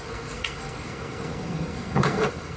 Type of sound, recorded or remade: remade